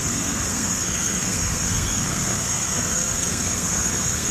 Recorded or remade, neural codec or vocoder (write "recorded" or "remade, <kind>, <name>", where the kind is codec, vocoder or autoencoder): remade, codec, SNAC